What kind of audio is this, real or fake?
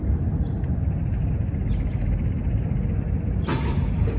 real